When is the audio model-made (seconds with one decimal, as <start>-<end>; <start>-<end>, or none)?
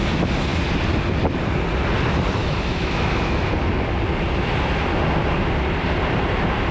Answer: 2.4-3.5